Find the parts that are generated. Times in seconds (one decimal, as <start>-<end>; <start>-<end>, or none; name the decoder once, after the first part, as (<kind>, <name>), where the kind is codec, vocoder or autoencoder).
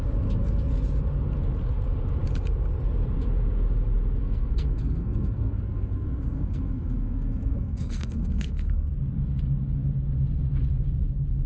4.2-8.9 (codec, SNAC)